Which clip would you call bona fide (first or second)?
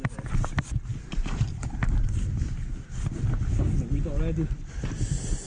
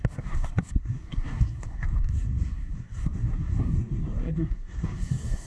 first